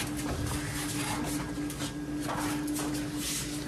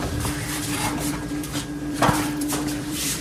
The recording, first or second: first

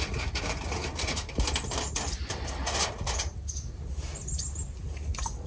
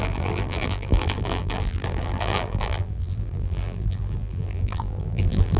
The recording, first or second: first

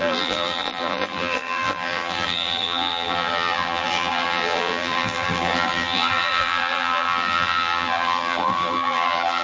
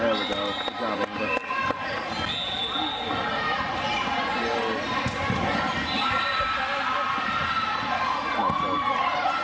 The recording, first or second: second